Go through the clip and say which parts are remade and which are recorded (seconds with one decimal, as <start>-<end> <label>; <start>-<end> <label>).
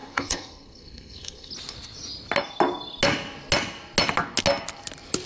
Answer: 0.0-1.5 remade; 1.5-5.3 recorded